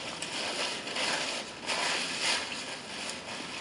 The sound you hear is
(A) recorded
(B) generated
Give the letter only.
A